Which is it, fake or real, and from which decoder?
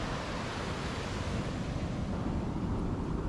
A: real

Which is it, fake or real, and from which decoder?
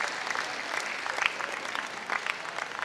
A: real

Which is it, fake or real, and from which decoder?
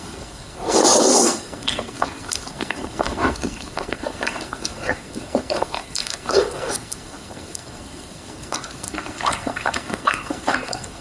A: fake, codec, SNAC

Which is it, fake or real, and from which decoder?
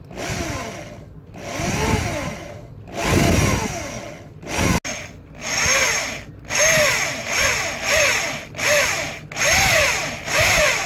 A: real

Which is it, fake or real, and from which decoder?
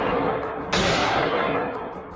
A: fake, codec, SNAC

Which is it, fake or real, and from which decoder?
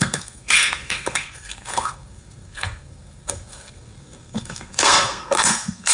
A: fake, codec, SNAC